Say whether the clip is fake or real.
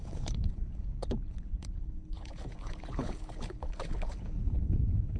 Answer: fake